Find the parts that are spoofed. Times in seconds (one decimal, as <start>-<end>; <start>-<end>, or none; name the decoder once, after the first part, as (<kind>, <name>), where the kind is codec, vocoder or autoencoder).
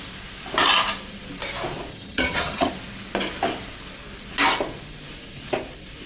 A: 1.9-2.7 (vocoder, HiFi-GAN)